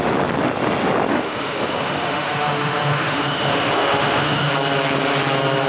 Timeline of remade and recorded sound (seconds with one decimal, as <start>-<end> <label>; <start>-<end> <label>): 0.0-1.1 recorded; 1.1-4.5 remade; 4.5-5.7 recorded